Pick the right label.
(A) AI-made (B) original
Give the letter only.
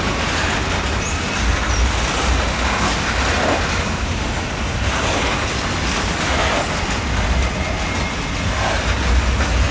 B